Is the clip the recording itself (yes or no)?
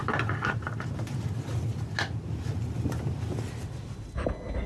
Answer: yes